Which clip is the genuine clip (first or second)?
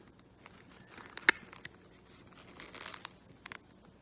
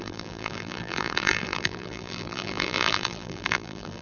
first